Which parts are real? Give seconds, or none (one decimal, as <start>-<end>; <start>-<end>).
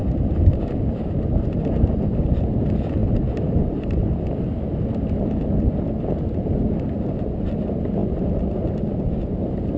0.5-8.0; 9.2-9.8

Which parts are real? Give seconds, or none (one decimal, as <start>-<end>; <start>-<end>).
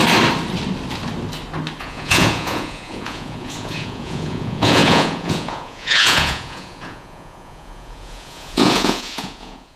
0.0-1.8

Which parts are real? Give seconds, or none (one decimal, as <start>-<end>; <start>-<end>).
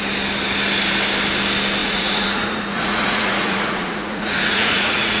0.0-1.8